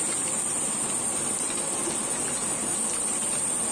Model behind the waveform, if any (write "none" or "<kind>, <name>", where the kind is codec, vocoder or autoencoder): none